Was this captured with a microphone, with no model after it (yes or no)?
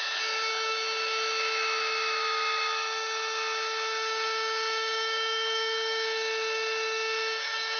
no